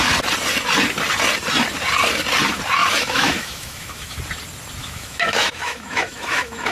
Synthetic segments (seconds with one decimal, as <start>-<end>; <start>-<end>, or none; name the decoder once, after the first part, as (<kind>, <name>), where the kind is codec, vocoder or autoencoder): 2.8-4.2 (autoencoder, DAC-VAE); 4.8-6.7